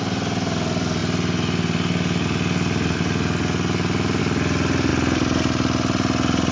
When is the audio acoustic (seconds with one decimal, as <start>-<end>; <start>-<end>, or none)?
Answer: 0.0-6.5